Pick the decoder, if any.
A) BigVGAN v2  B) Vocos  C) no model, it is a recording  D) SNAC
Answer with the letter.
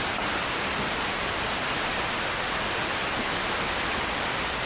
C